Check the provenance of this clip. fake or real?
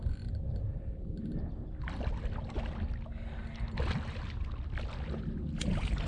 real